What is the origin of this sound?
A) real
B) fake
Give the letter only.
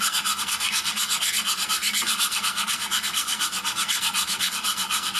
B